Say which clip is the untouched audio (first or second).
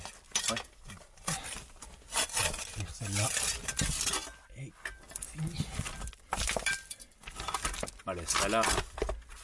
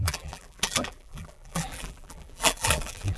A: first